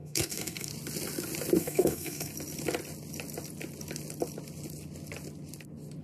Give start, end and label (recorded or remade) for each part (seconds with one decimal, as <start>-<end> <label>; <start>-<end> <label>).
0.0-0.7 remade; 0.7-1.6 recorded; 1.6-2.3 remade; 2.3-6.0 recorded